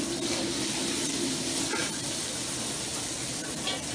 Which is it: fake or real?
real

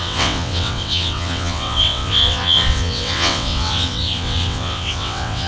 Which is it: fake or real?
fake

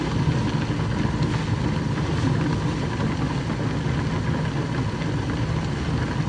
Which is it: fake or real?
real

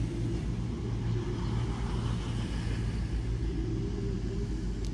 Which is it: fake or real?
real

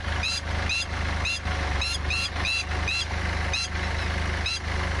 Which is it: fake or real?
real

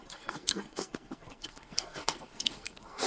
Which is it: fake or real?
fake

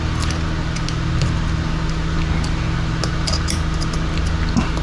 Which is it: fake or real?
real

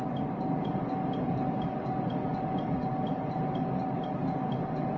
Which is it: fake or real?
real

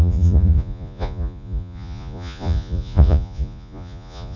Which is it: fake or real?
fake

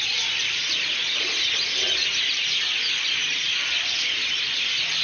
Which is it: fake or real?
real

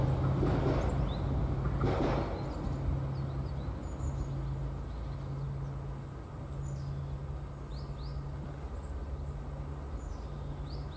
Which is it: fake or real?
real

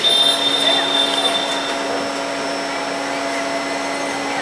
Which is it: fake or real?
real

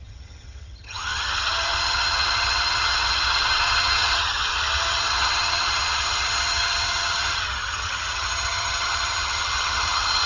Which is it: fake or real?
fake